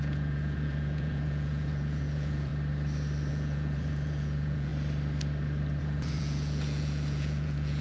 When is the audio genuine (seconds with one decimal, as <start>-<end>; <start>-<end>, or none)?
2.5-3.3; 4.7-5.8